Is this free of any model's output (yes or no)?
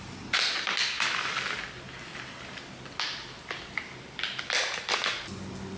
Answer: yes